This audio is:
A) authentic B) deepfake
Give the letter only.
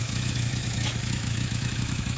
B